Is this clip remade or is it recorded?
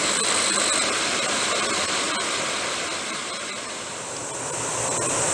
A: recorded